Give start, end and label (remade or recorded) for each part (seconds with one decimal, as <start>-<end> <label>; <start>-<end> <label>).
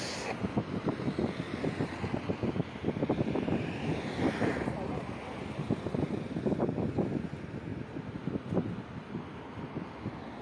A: 0.0-10.4 recorded